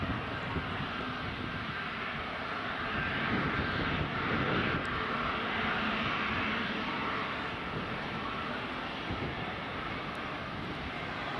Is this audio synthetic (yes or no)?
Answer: no